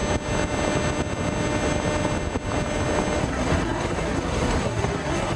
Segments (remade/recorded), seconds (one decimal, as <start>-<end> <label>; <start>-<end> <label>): 0.0-3.2 recorded; 3.2-5.4 remade